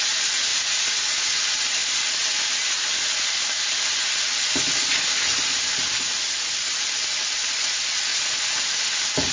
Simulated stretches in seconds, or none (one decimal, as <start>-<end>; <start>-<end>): 0.5-1.4; 8.1-8.7